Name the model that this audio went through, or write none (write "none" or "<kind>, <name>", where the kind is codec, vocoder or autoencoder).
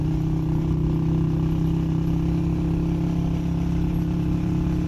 none